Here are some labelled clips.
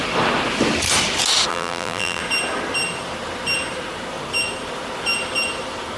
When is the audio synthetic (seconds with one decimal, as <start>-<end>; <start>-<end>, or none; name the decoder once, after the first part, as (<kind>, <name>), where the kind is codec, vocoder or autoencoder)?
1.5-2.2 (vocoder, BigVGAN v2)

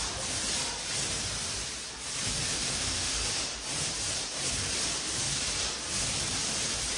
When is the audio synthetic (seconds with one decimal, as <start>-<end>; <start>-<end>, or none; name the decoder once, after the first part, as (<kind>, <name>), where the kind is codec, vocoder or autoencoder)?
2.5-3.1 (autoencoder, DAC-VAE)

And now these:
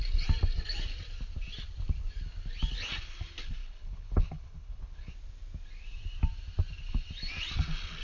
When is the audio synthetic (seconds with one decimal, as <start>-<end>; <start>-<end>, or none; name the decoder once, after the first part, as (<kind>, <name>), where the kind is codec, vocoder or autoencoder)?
3.6-5.1 (codec, HILCodec)

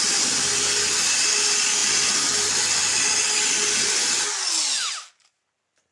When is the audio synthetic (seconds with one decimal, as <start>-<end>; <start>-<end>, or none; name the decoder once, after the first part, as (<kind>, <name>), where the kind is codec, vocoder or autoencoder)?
none

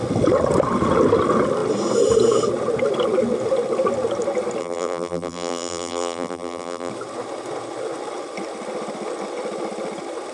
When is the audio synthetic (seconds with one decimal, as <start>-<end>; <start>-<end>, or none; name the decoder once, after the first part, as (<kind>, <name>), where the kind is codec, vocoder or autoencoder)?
4.6-6.9 (vocoder, BigVGAN v2)

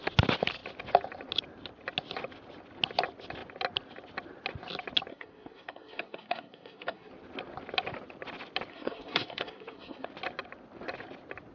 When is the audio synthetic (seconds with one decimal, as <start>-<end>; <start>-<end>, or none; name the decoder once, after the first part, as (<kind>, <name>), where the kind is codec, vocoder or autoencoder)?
5.1-7.1 (codec, SNAC); 8.7-10.1

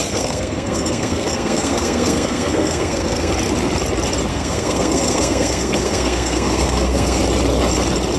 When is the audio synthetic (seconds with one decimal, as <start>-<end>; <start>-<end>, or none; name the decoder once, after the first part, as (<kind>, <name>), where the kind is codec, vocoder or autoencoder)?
0.0-3.3 (codec, SNAC); 4.3-7.2

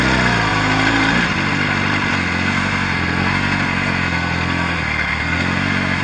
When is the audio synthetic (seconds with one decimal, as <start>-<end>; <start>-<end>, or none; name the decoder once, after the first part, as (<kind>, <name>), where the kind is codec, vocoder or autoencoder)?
2.1-6.0 (codec, SNAC)